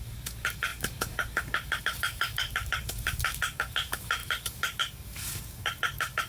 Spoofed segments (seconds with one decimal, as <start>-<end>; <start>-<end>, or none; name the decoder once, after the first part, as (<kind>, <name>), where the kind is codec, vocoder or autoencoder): 0.0-6.3 (codec, DAC)